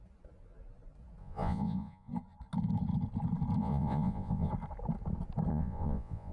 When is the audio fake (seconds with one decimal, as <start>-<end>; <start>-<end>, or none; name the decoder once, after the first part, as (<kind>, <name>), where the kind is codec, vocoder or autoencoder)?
1.2-2.1 (vocoder, Vocos); 3.6-4.5; 5.5-6.3